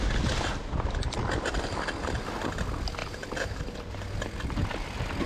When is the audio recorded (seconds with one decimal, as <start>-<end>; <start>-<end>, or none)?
0.0-3.0; 3.6-5.3